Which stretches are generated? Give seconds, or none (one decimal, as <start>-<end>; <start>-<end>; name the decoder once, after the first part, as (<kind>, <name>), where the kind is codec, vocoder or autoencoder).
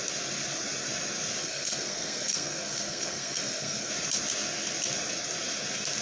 1.4-3.9 (codec, SNAC)